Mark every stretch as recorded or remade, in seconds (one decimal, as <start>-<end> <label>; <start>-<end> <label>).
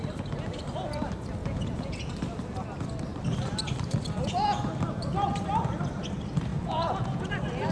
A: 0.0-1.4 recorded; 1.4-2.1 remade; 2.1-6.5 recorded; 6.5-7.3 remade; 7.3-7.7 recorded